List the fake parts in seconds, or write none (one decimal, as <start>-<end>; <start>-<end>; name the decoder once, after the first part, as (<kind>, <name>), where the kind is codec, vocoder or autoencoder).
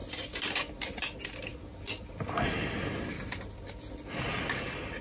none